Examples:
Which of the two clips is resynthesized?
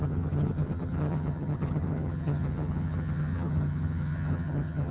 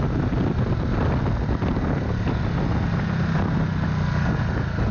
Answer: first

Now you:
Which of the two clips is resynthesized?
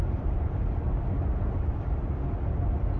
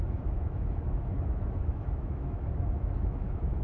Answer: second